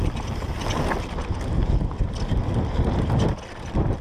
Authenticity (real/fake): real